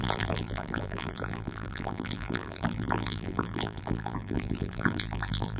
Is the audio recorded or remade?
remade